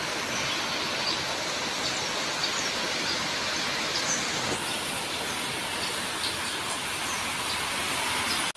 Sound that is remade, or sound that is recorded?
recorded